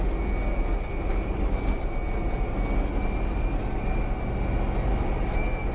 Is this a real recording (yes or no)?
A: yes